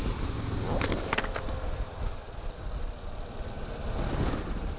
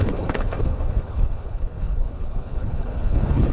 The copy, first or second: second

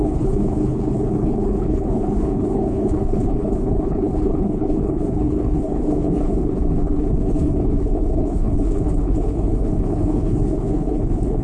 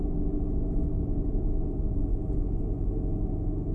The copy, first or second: first